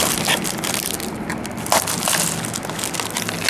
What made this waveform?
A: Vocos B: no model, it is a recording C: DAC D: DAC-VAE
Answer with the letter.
B